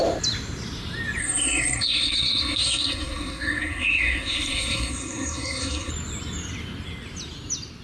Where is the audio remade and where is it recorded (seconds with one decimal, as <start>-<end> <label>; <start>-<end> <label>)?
0.0-1.2 recorded; 1.2-5.9 remade; 5.9-7.8 recorded